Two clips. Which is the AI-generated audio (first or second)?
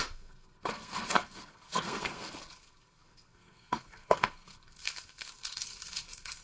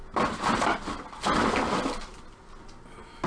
first